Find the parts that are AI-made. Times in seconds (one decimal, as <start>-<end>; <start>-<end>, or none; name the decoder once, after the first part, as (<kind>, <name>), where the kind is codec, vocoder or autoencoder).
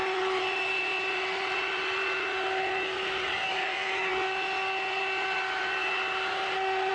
3.3-4.1 (codec, DAC)